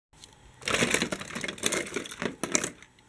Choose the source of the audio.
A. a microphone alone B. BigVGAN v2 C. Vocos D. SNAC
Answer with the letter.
A